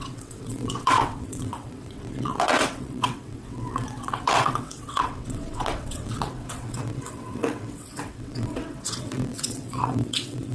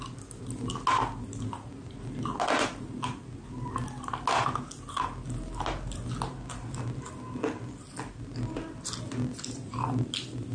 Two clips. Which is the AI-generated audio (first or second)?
first